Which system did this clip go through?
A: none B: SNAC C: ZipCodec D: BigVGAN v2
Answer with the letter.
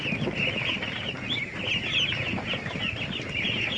A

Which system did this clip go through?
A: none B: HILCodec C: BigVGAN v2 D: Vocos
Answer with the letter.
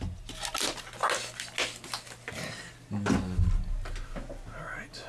A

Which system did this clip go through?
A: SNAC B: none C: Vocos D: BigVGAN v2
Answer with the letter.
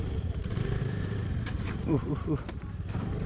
D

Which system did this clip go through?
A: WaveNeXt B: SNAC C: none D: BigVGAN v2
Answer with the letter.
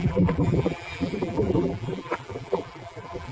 D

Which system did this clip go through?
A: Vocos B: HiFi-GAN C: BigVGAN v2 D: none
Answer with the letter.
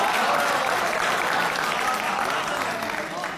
D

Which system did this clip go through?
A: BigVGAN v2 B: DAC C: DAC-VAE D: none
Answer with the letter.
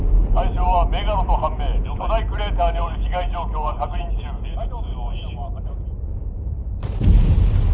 A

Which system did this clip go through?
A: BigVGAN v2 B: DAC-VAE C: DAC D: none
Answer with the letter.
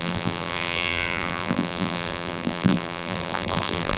A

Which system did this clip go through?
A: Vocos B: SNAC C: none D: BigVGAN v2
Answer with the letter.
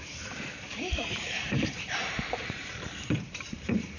D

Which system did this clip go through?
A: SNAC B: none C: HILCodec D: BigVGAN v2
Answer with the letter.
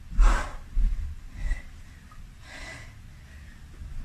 B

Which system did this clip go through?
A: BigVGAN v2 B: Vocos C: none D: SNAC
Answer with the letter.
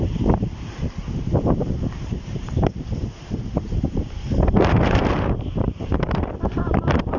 A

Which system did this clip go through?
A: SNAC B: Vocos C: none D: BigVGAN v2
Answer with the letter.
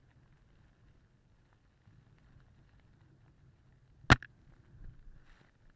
C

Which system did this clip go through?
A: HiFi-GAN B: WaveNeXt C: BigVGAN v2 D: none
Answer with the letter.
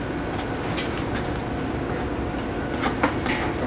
D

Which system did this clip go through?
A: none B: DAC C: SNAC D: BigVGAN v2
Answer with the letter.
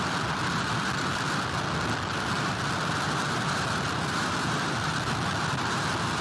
D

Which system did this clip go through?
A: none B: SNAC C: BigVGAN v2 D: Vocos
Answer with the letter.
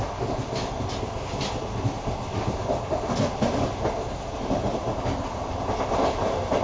A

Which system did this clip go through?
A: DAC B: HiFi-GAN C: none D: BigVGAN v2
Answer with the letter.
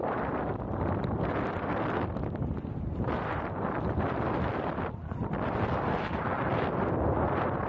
D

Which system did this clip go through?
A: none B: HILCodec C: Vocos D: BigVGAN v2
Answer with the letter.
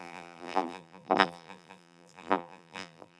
D